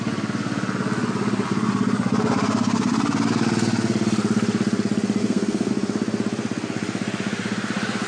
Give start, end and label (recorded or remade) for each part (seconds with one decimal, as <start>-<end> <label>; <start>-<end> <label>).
0.0-5.2 recorded; 5.2-5.7 remade; 5.7-8.1 recorded